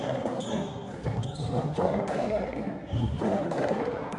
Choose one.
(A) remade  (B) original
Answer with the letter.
A